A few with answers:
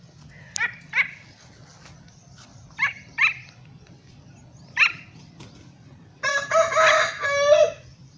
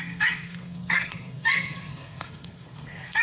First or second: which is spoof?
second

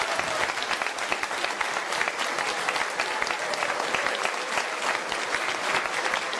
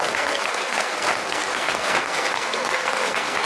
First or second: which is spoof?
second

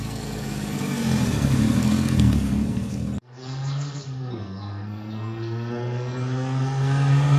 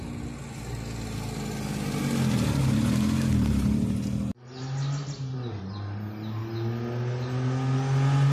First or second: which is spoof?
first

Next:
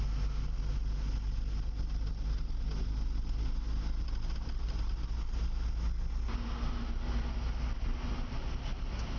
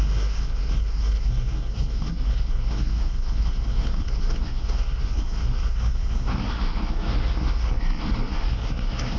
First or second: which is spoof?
second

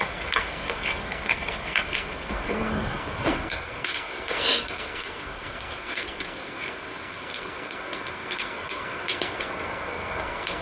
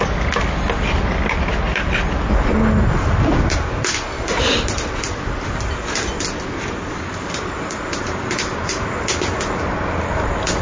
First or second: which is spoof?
first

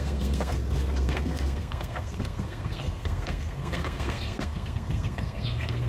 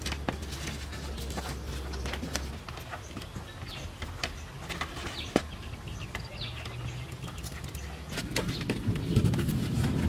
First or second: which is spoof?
first